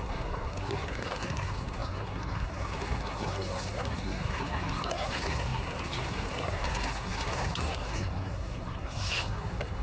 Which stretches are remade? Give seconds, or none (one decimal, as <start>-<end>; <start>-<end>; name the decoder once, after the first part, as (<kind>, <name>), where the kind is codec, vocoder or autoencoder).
0.0-9.8 (codec, SNAC)